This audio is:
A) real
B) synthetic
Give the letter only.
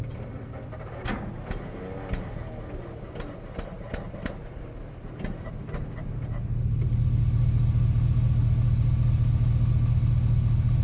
A